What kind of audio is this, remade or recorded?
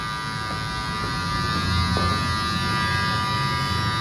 recorded